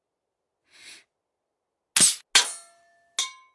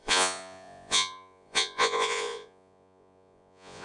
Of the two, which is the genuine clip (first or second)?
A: first